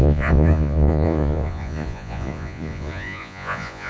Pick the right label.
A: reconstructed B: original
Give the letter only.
A